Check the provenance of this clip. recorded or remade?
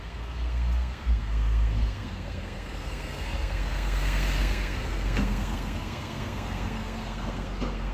remade